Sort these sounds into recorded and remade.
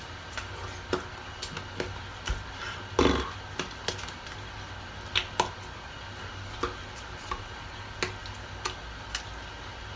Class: recorded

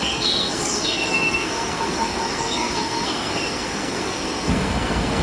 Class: remade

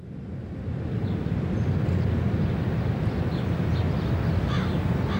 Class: recorded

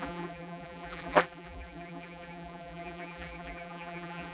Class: remade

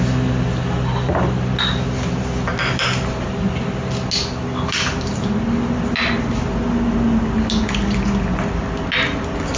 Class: recorded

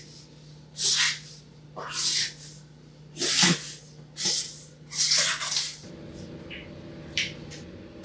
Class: recorded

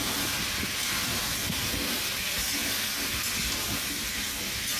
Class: recorded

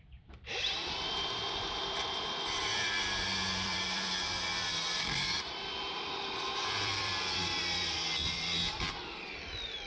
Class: remade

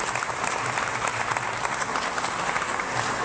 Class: recorded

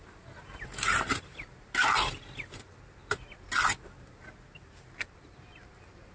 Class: recorded